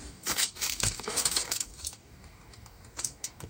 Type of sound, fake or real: fake